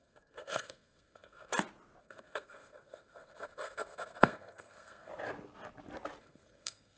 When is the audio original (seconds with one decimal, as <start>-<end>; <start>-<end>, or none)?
1.5-2.0; 5.1-6.2